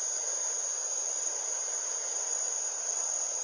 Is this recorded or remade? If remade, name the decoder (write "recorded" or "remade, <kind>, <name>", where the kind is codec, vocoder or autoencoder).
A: recorded